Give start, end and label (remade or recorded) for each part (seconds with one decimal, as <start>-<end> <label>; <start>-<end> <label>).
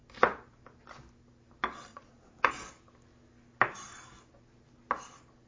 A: 0.0-1.9 recorded; 1.9-2.5 remade; 2.5-5.5 recorded